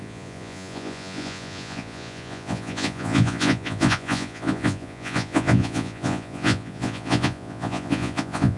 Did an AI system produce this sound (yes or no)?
yes